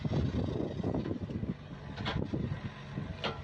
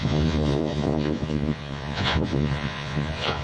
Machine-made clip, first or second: second